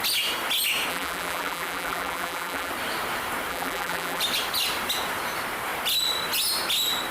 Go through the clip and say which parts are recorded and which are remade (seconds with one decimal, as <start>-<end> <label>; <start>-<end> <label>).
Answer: 0.0-0.9 recorded; 0.9-2.7 remade; 2.7-3.5 recorded; 3.5-4.2 remade; 4.2-7.1 recorded